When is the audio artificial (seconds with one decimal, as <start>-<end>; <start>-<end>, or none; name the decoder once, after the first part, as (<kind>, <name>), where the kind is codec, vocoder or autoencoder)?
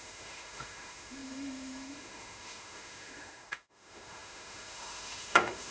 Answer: 0.0-5.7 (autoencoder, DAC-VAE)